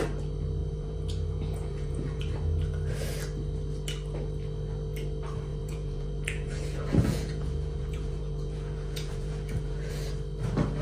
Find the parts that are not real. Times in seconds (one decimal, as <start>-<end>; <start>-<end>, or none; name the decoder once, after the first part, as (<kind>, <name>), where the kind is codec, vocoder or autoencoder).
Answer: 0.6-2.2 (vocoder, Vocos); 5.5-9.9